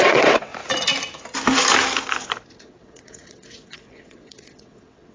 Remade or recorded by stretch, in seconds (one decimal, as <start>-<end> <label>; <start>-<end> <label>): 0.0-0.5 remade; 0.5-2.6 recorded; 2.6-5.1 remade